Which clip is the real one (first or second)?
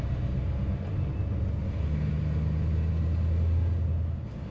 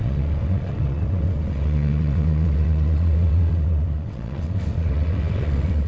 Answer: first